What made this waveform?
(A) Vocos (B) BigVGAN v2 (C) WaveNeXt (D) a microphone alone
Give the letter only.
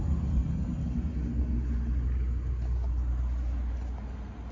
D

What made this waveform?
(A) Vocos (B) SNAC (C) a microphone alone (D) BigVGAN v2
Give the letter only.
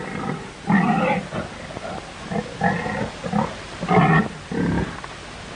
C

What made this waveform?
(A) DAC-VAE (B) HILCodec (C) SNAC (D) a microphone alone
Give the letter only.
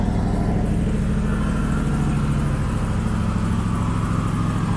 D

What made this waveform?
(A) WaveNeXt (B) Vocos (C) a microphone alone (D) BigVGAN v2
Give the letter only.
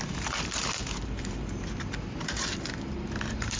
D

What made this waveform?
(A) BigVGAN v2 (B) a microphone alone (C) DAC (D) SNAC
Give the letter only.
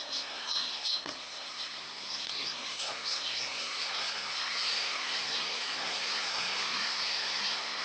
D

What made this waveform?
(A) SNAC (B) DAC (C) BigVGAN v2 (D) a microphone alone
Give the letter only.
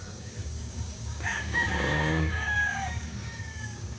B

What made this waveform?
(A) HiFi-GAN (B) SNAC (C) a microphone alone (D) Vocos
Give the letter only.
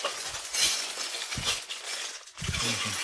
D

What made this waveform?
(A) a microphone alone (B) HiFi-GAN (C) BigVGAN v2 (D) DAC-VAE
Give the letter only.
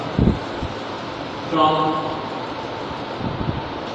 A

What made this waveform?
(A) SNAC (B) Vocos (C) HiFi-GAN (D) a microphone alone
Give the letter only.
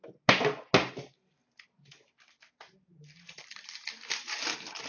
D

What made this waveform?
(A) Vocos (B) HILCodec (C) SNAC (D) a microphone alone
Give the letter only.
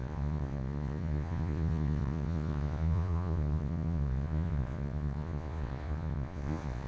A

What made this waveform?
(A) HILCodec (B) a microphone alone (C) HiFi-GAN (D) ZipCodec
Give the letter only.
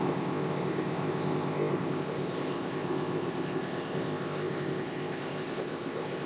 D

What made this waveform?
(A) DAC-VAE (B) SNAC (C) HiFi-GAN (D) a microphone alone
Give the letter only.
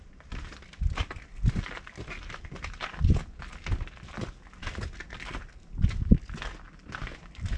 D